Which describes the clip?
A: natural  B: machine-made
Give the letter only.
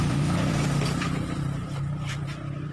B